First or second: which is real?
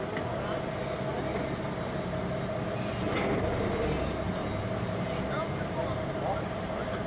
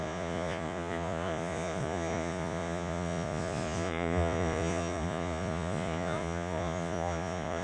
first